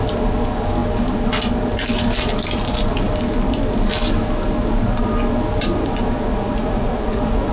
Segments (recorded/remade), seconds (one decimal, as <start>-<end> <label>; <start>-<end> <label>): 0.0-6.3 recorded; 6.3-7.5 remade